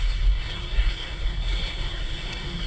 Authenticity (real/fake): fake